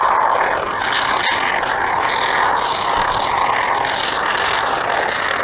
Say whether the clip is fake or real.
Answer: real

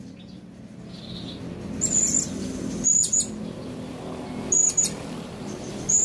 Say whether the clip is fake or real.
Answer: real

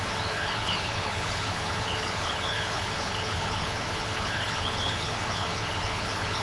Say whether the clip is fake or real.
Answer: fake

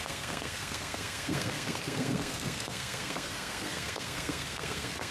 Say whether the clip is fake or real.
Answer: fake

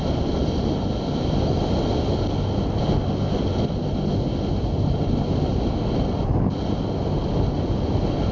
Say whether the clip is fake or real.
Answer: real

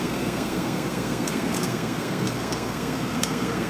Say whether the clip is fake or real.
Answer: fake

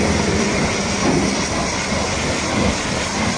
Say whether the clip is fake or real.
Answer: real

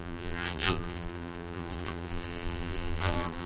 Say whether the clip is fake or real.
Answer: fake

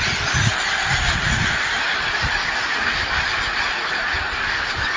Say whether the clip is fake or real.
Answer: real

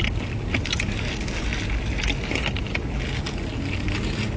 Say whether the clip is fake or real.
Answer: real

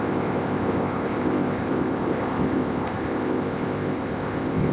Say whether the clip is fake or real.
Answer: fake